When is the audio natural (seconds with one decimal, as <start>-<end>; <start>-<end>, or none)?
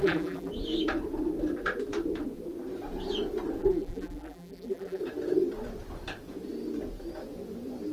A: 0.5-3.6; 5.0-7.9